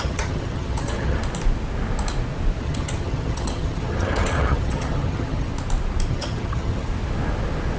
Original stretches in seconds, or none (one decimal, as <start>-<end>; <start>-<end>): 1.2-2.6; 5.5-6.1; 6.9-7.8